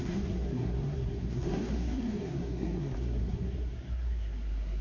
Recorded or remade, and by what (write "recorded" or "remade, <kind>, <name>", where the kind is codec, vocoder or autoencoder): remade, codec, SNAC